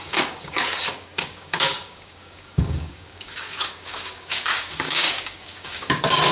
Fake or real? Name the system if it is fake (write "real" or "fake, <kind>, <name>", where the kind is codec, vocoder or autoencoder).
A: fake, codec, DAC